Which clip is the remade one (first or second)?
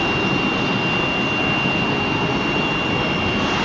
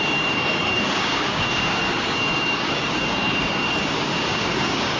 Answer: second